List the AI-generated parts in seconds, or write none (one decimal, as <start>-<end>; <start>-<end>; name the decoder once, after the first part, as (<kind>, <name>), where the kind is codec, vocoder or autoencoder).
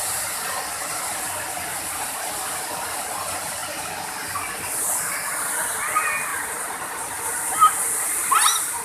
1.7-2.3 (vocoder, BigVGAN v2); 6.3-7.1